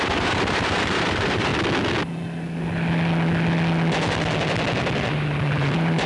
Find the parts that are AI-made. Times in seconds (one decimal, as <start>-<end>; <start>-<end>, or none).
0.0-1.5; 5.1-6.1